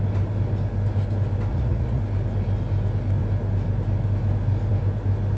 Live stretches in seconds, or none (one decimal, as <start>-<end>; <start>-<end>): 0.0-1.5; 2.0-5.4